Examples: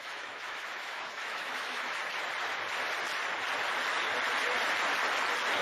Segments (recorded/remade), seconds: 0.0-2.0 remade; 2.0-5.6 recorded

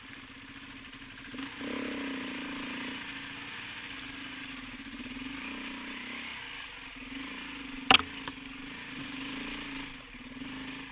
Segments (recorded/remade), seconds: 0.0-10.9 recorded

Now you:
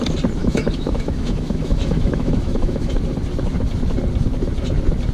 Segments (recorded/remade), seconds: 0.0-0.4 recorded; 0.4-2.9 remade; 2.9-5.1 recorded

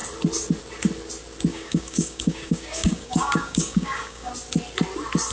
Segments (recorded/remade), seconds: 0.0-1.5 recorded; 1.5-4.3 remade; 4.3-5.3 recorded

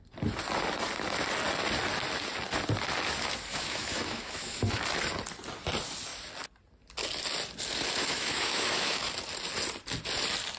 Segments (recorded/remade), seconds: 0.0-3.5 recorded; 3.5-4.8 remade; 4.8-8.0 recorded; 8.0-9.1 remade; 9.1-10.6 recorded

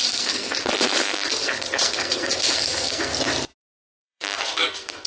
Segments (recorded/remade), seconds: 0.0-3.1 remade; 3.1-3.6 recorded; 3.6-5.1 remade

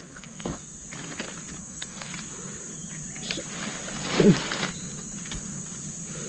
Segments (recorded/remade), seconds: 0.0-0.6 remade; 0.6-1.6 recorded; 1.6-2.1 remade; 2.1-6.3 recorded